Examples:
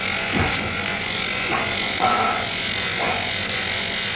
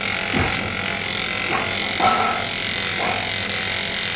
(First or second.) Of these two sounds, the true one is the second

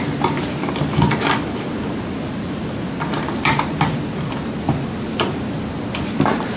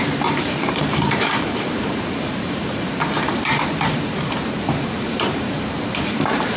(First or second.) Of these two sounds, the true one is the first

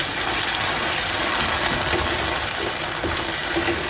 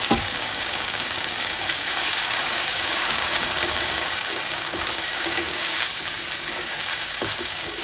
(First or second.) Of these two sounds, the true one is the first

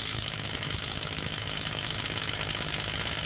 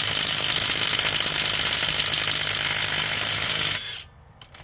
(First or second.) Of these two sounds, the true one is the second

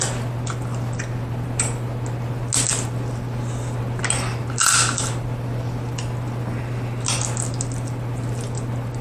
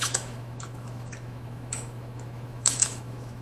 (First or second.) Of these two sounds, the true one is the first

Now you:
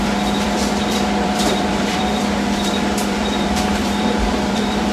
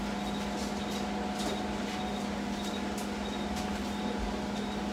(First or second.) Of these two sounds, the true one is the second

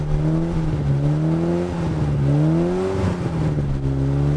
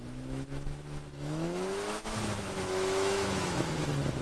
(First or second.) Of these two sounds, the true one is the first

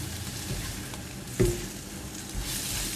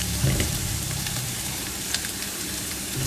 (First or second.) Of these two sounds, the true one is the first